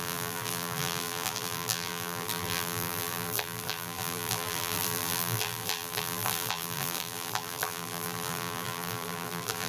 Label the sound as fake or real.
fake